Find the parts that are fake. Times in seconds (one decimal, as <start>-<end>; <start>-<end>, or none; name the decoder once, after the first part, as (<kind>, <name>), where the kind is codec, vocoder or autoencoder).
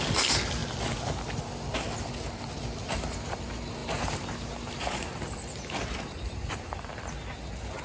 3.8-6.9 (vocoder, BigVGAN v2)